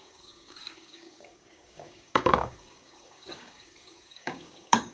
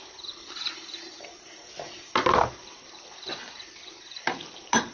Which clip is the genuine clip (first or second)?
second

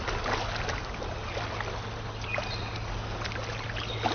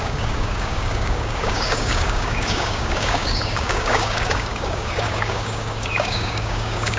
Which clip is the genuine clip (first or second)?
first